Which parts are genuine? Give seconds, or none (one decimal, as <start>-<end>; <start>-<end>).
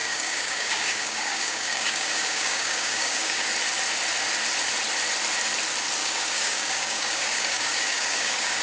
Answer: 3.5-6.0